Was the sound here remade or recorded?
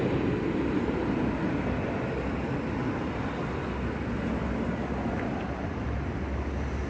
recorded